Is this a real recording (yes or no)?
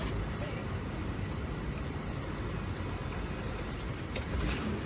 yes